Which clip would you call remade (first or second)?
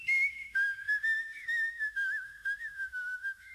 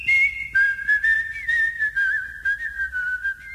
first